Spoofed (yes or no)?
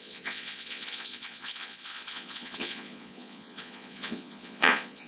yes